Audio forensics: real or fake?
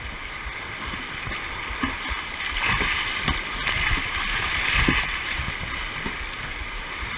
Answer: real